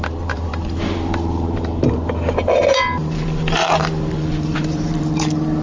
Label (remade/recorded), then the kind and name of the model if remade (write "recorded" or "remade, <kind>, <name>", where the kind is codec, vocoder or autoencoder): remade, vocoder, BigVGAN v2